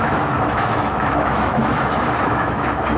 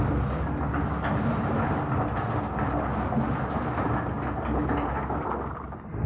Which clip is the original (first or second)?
second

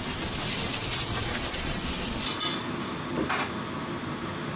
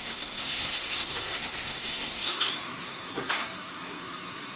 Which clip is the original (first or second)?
first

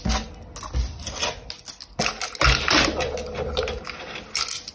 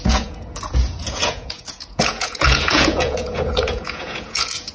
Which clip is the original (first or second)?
first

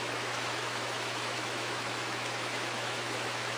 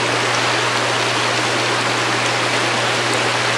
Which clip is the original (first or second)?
second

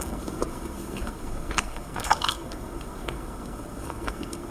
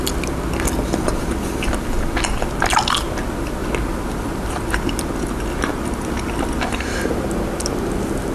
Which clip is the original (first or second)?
second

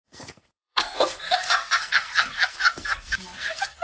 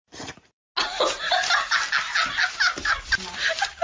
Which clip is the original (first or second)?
second